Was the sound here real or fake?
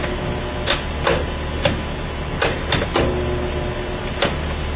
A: real